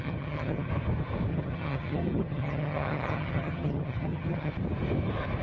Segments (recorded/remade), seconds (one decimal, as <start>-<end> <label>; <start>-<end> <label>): 0.0-0.7 remade; 0.7-1.3 recorded; 1.3-4.5 remade; 4.5-5.4 recorded